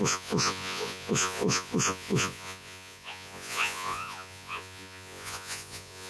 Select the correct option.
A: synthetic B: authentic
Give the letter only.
A